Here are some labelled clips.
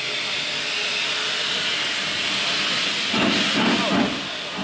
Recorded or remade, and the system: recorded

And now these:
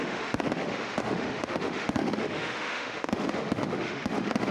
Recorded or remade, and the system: remade, autoencoder, DAC-VAE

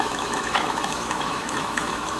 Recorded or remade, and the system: remade, autoencoder, DAC-VAE